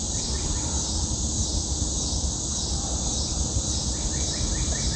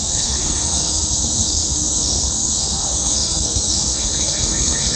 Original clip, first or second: first